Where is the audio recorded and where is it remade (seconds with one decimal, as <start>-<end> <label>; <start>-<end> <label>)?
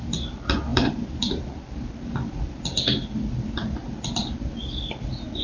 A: 0.0-0.7 recorded; 0.7-1.4 remade; 1.4-5.4 recorded